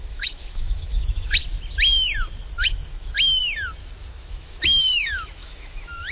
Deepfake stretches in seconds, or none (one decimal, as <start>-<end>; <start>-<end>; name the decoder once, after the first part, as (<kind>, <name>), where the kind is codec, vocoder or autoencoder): 0.0-1.4 (autoencoder, DAC-VAE); 2.5-3.4; 4.1-6.1